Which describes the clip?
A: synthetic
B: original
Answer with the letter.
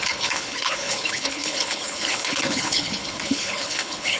A